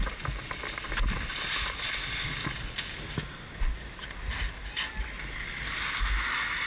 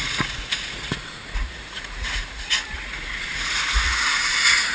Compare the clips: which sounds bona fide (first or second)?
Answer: first